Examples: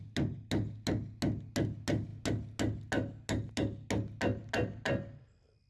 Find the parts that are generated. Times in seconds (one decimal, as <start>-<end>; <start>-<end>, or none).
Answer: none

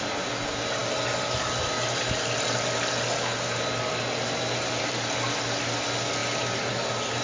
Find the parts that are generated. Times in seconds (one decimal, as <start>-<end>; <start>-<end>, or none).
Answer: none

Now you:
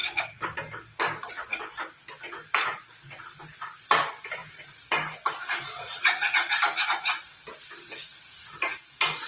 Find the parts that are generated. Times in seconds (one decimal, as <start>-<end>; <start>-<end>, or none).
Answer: none